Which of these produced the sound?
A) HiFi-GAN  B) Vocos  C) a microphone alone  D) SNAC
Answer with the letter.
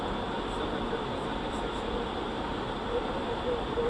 C